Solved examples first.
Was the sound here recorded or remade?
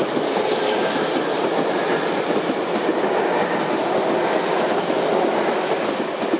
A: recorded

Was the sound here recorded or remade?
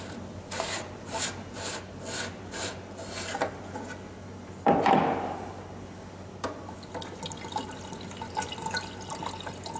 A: recorded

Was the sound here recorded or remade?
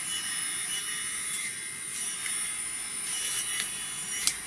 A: recorded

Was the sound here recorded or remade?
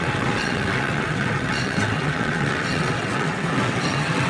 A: remade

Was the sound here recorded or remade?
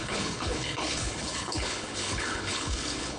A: remade